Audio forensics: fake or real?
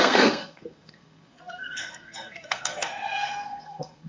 fake